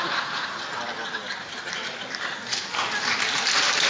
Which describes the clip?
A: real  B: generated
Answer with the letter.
A